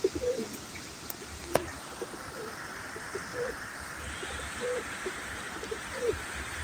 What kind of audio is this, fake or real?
fake